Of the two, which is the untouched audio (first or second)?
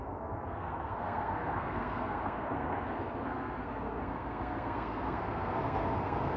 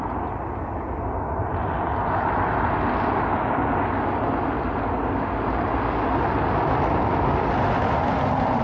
second